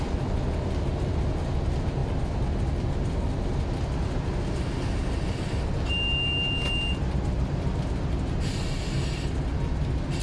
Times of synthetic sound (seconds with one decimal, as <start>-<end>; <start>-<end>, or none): none

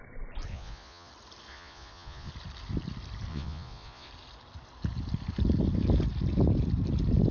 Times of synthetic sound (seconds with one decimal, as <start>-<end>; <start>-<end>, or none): 0.5-1.1; 1.5-2.3; 3.3-4.1

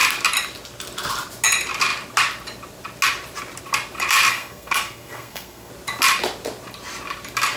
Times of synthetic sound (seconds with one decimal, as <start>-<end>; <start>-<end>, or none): 4.3-5.7

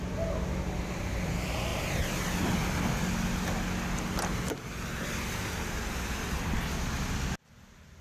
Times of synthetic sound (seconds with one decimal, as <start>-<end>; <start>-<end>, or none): none

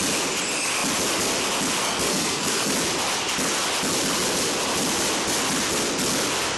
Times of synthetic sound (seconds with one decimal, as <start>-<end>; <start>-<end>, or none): 1.8-2.7

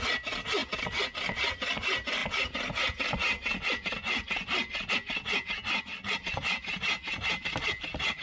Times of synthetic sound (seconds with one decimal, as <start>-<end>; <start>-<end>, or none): none